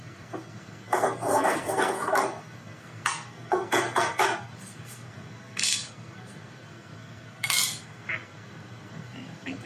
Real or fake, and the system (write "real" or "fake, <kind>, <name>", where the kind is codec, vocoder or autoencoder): fake, codec, SNAC